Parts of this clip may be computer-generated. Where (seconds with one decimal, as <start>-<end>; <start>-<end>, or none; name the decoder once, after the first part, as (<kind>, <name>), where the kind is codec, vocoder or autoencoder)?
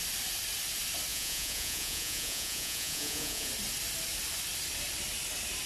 1.1-3.5 (vocoder, Vocos)